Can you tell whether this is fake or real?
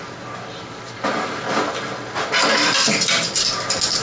real